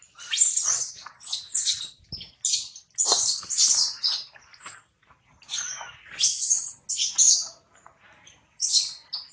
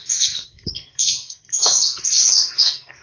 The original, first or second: first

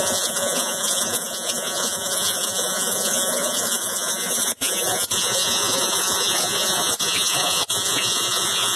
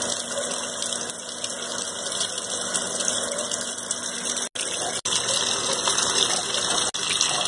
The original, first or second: second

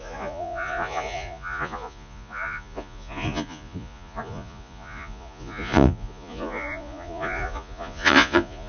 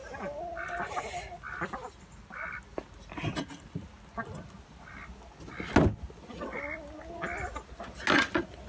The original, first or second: second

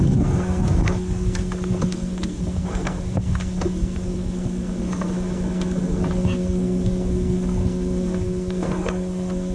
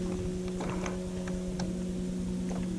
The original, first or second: second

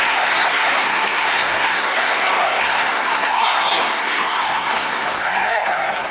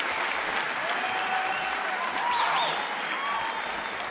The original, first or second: second